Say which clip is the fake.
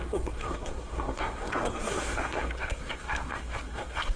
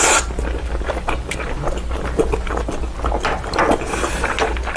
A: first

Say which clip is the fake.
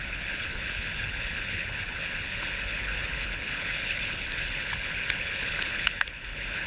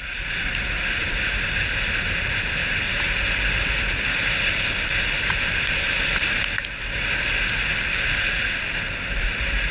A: first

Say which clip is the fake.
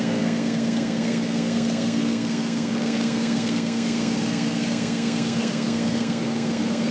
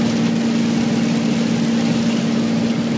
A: first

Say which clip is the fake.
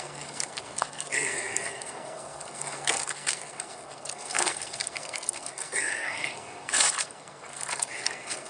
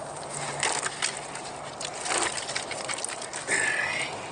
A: first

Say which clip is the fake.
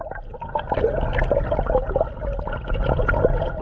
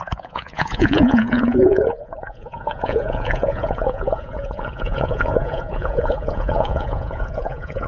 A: second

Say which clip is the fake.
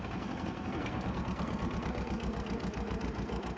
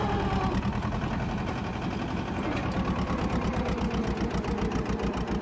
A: first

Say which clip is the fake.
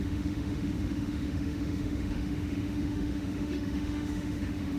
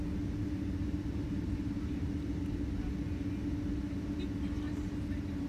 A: first